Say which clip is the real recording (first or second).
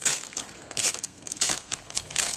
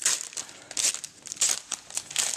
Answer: second